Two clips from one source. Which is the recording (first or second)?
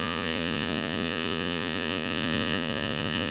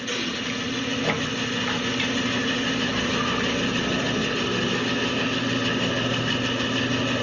second